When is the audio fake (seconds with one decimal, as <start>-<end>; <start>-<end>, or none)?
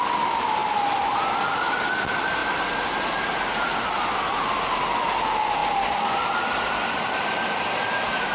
none